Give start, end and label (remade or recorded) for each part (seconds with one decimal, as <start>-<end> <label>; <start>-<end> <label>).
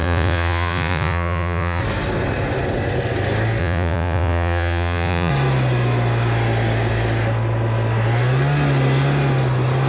0.0-1.8 remade; 1.8-3.6 recorded; 3.6-5.3 remade; 5.3-9.9 recorded